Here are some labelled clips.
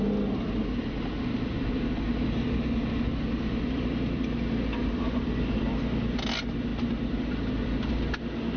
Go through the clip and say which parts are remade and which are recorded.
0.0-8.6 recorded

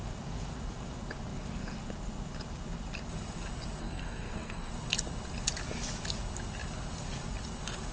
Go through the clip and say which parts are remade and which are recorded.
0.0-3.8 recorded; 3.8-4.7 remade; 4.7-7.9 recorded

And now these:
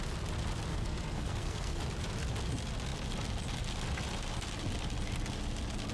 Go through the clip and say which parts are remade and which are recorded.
0.0-0.7 recorded; 0.7-1.8 remade; 1.8-5.9 recorded

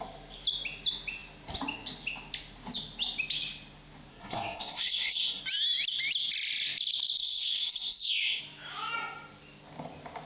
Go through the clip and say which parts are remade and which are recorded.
0.0-4.1 recorded; 4.1-5.4 remade; 5.4-7.2 recorded; 7.2-8.4 remade; 8.4-10.3 recorded

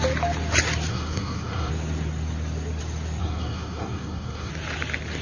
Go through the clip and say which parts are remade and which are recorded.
0.0-0.9 recorded; 0.9-1.7 remade; 1.7-3.2 recorded; 3.2-4.5 remade; 4.5-5.2 recorded